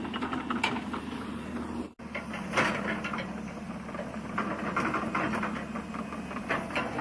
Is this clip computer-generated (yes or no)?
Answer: no